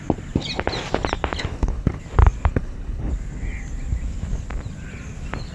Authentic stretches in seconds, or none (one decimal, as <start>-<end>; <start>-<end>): 0.0-1.4; 2.0-2.5; 3.1-5.5